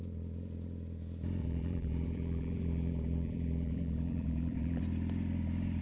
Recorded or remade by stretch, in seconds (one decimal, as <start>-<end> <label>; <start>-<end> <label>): 0.0-1.4 recorded; 1.4-4.8 remade; 4.8-5.8 recorded